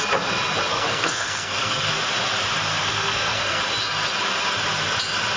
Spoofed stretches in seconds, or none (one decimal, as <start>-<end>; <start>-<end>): 0.7-1.9; 2.7-3.6